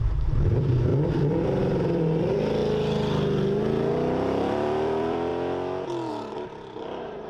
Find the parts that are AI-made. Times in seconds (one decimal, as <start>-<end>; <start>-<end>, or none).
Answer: 0.0-2.6; 3.9-5.3; 6.1-7.3